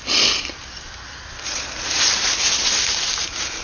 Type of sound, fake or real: real